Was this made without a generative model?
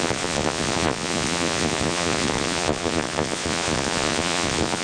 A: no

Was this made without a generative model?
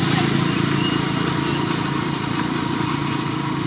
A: yes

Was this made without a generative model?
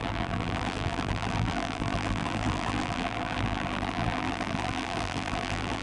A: no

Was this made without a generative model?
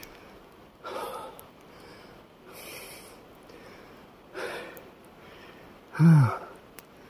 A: yes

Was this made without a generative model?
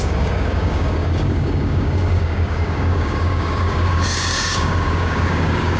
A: no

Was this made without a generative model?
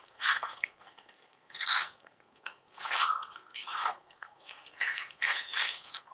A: no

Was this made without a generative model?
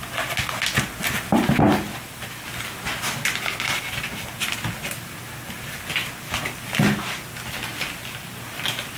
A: yes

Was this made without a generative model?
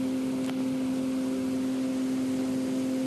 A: yes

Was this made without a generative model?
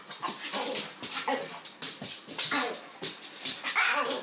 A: yes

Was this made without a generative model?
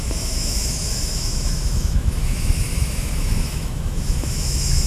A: no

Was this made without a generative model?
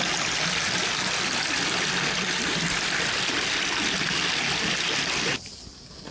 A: yes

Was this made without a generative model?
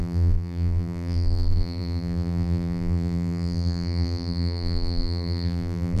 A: no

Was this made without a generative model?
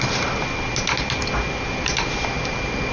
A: yes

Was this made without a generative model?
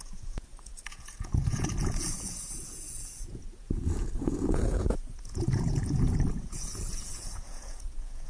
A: no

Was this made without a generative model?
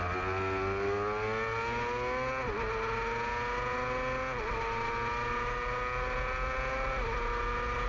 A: yes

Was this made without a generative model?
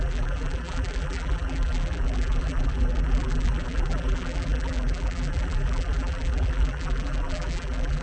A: no